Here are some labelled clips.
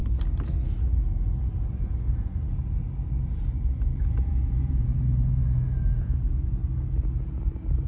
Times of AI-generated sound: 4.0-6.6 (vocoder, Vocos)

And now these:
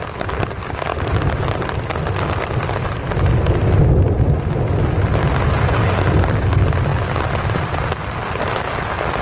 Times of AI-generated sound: none

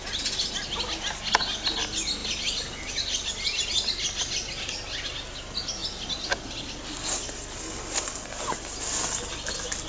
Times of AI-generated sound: none

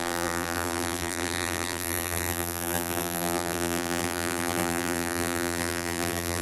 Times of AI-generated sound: 0.0-6.4 (vocoder, BigVGAN v2)

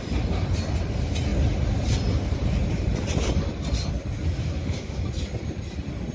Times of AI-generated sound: 4.4-5.0 (autoencoder, DAC-VAE)

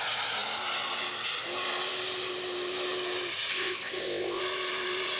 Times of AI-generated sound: 3.5-4.4 (codec, ZipCodec)

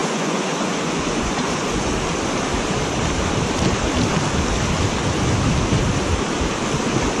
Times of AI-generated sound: 0.0-1.9 (vocoder, Vocos)